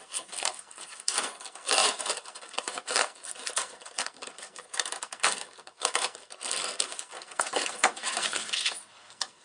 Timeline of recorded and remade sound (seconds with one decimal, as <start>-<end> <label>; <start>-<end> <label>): 0.0-9.4 remade